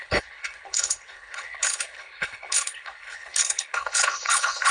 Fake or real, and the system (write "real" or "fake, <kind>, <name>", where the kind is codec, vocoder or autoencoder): fake, codec, HILCodec